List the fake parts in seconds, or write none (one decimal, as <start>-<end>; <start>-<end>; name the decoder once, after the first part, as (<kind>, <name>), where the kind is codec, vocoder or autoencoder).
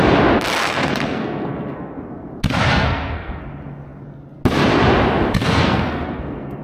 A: 0.6-2.3 (codec, SNAC); 2.7-3.4; 5.4-6.6